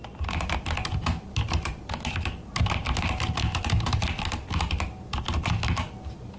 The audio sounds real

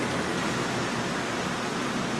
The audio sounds real